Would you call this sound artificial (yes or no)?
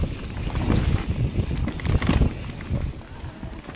no